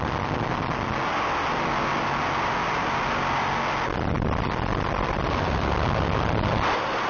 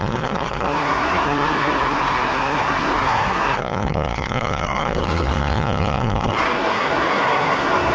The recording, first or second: first